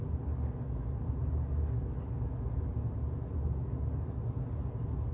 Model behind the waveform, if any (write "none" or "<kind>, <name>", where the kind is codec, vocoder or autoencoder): none